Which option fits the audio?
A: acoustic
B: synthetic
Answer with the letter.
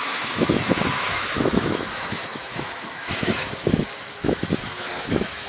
B